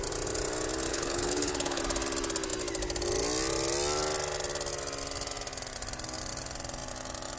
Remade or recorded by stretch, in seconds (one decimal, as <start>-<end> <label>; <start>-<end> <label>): 0.0-0.9 recorded; 0.9-1.8 remade; 1.8-7.4 recorded